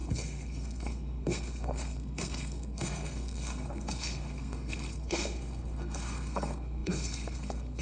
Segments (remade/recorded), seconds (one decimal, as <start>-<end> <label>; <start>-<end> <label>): 0.0-7.8 remade